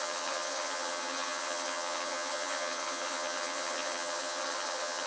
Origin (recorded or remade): remade